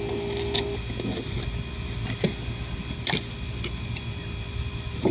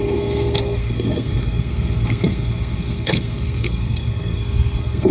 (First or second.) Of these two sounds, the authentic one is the first